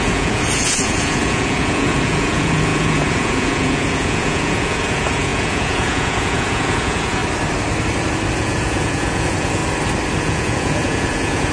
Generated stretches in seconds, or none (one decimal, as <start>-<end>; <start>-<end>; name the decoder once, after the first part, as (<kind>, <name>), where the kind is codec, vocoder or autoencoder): 0.0-7.2 (vocoder, Vocos); 8.3-9.6; 10.2-11.5